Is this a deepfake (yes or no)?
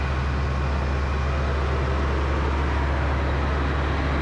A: no